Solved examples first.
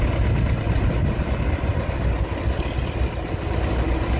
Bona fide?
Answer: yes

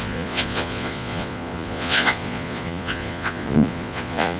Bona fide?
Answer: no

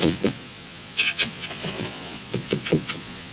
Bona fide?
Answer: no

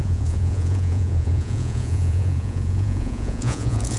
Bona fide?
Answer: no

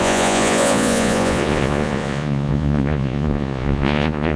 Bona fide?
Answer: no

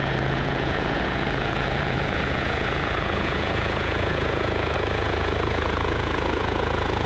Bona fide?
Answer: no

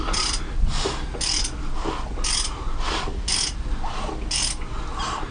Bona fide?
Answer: yes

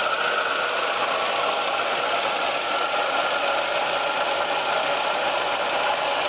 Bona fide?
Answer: yes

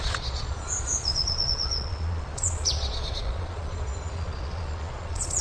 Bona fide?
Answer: no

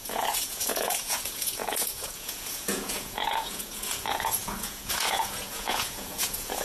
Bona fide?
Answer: no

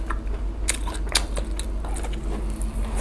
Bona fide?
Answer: yes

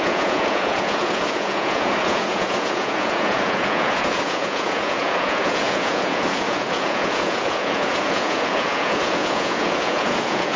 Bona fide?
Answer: no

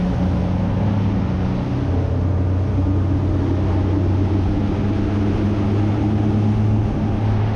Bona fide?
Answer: yes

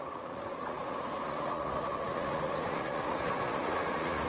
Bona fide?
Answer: no